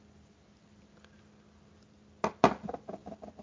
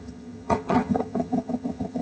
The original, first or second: first